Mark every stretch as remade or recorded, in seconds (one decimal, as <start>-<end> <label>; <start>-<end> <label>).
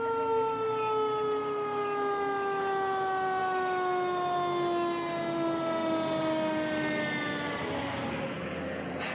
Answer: 0.0-9.1 recorded